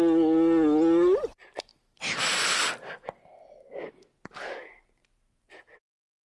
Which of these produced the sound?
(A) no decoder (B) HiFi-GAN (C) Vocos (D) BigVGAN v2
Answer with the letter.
A